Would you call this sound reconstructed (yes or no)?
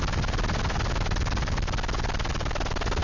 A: no